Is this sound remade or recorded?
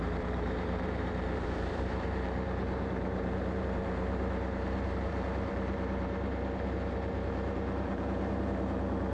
remade